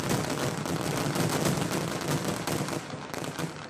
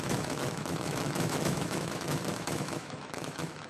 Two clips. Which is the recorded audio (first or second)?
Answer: first